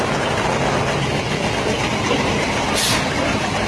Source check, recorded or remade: recorded